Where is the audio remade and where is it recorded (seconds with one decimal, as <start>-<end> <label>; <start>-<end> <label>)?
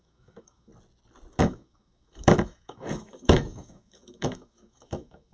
0.0-0.7 remade; 0.7-1.4 recorded; 1.4-5.3 remade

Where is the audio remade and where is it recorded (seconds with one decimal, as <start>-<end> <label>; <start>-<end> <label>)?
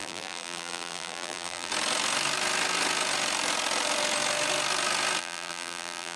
0.0-1.7 remade; 1.7-5.2 recorded; 5.2-6.2 remade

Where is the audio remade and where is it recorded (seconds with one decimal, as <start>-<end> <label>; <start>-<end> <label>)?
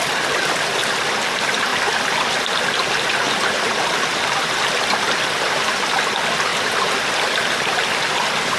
0.0-8.6 recorded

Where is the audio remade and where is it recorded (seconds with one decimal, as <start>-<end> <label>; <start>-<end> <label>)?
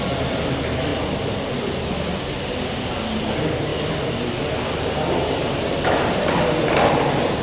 0.0-7.4 recorded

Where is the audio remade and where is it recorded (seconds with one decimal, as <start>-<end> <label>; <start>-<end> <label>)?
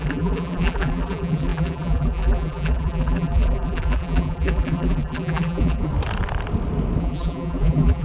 0.0-5.9 remade; 5.9-7.0 recorded; 7.0-8.0 remade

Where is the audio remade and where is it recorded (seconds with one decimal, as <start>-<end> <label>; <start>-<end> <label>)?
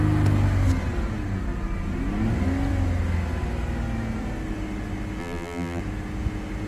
0.0-5.2 recorded; 5.2-5.8 remade; 5.8-6.7 recorded